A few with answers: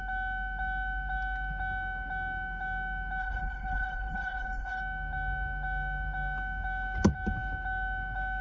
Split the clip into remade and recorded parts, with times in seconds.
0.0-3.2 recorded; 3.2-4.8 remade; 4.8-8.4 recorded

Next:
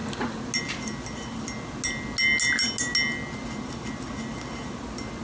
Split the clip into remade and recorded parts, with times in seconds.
0.0-5.2 recorded

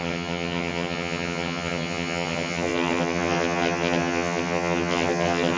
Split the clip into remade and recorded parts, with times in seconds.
0.0-5.6 remade

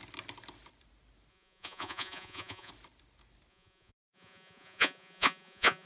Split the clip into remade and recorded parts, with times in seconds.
0.0-1.3 recorded; 1.3-2.7 remade; 2.7-3.5 recorded; 3.5-5.9 remade